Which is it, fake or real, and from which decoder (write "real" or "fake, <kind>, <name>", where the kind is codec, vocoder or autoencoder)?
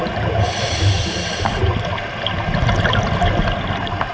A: real